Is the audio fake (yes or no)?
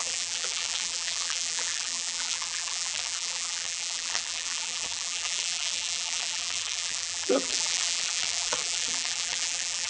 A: yes